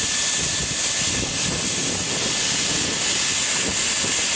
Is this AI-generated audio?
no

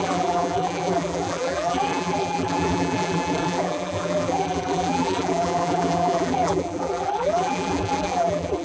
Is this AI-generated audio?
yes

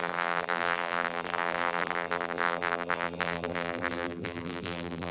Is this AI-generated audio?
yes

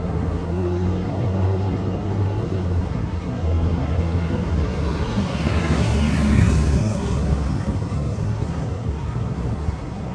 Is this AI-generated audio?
yes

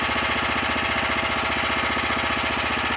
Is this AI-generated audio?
no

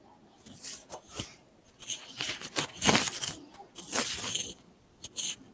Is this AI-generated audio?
no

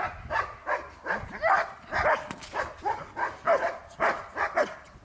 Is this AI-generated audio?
no